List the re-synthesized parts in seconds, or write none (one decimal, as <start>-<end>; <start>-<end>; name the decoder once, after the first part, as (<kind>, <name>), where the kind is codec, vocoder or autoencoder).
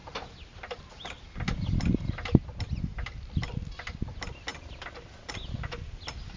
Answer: none